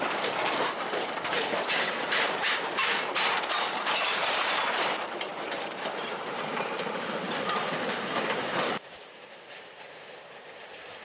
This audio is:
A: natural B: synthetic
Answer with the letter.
B